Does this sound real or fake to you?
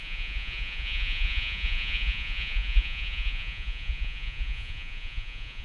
fake